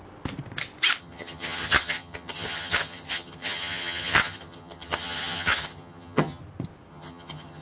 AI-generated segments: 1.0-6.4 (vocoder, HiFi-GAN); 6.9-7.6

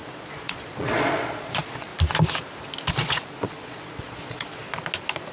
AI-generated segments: 0.0-1.9 (vocoder, Vocos); 2.9-4.6

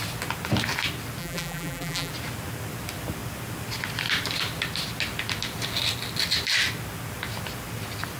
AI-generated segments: 1.2-2.1 (vocoder, BigVGAN v2)